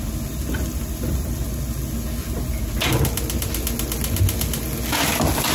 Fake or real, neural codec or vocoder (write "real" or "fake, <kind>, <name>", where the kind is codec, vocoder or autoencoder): real